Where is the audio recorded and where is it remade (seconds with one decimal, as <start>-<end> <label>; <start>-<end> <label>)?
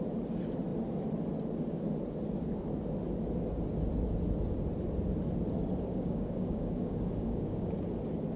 0.0-5.9 recorded; 5.9-7.7 remade; 7.7-8.4 recorded